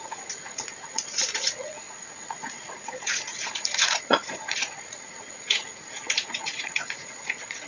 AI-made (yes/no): yes